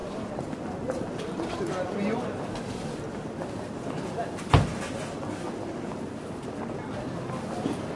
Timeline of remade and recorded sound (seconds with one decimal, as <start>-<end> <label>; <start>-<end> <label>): 0.0-8.0 recorded